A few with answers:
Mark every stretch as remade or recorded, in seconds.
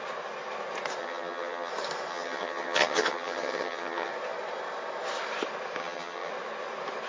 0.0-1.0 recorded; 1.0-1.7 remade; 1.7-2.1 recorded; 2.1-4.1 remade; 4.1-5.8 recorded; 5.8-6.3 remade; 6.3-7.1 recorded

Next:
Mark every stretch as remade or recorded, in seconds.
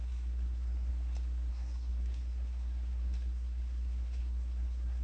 0.0-0.9 remade; 0.9-1.5 recorded; 1.5-5.0 remade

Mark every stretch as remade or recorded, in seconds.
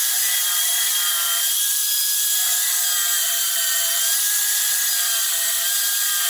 0.0-6.3 remade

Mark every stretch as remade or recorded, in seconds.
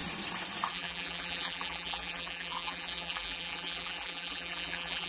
0.0-0.7 recorded; 0.7-5.1 remade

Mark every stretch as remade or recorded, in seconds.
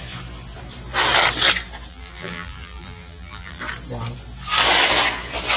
0.0-1.9 recorded; 1.9-3.6 remade; 3.6-5.6 recorded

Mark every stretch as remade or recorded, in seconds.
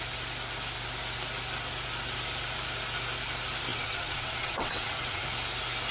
0.0-3.7 recorded; 3.7-5.2 remade; 5.2-5.9 recorded